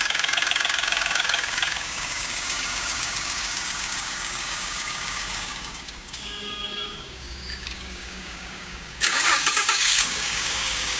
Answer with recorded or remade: remade